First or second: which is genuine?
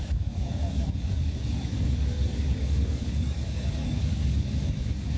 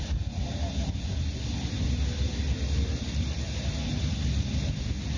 second